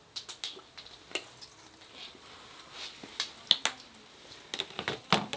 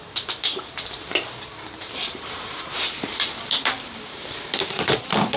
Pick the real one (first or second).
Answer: first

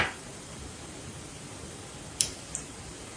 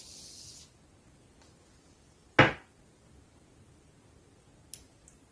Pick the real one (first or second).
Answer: second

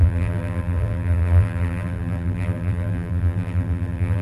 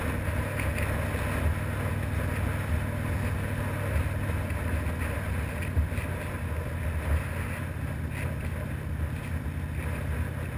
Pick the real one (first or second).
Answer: second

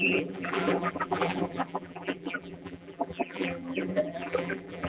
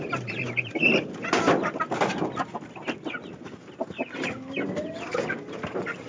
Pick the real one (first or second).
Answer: second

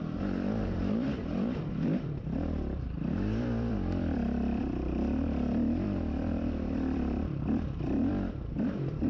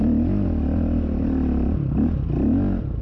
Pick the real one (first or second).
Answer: second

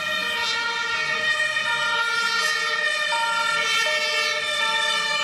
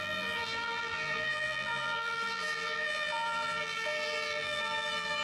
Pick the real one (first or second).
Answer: first